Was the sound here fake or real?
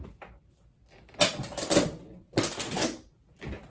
real